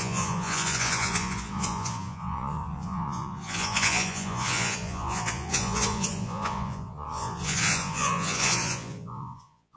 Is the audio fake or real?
fake